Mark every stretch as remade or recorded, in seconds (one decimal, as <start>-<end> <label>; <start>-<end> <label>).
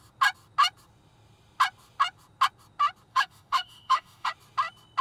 0.0-3.1 recorded; 3.1-4.3 remade; 4.3-5.0 recorded